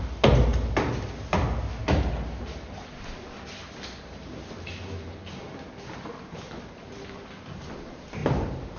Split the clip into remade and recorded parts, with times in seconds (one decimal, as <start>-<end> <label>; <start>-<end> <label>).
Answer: 0.0-8.8 recorded